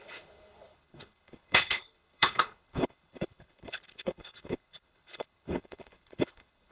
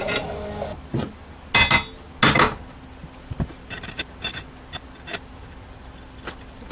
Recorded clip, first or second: second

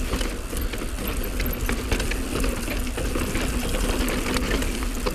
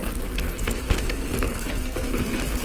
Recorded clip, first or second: first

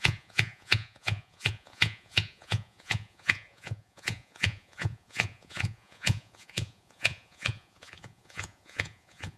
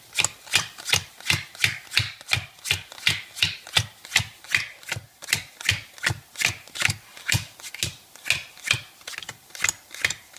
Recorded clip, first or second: second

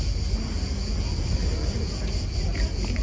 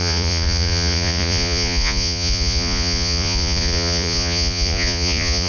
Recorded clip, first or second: first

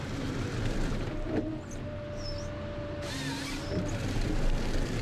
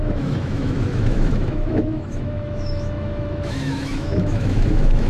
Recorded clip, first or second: first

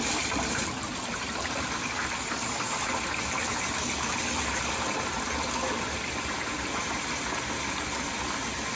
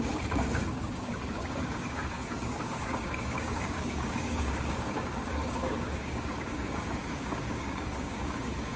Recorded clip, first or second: first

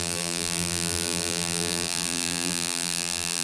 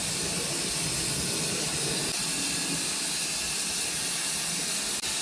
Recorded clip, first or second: second